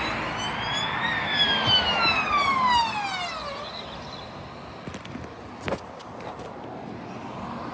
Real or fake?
real